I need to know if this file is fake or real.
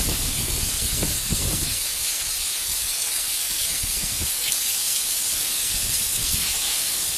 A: fake